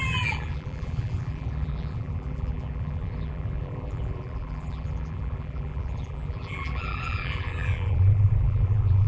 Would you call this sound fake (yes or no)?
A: yes